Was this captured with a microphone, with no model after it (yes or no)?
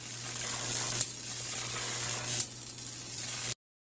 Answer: yes